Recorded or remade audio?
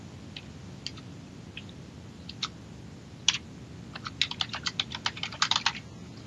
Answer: recorded